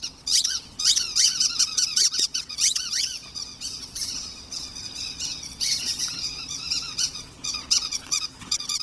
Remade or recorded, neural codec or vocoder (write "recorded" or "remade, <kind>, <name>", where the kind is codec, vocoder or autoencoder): remade, vocoder, WaveNeXt